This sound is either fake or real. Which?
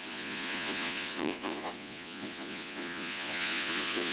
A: fake